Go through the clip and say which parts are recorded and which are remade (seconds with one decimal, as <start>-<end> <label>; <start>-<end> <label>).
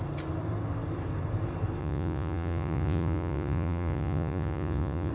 0.0-1.8 recorded; 1.8-5.1 remade